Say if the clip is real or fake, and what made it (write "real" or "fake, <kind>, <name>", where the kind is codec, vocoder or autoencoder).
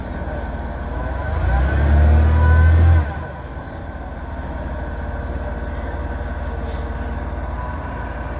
real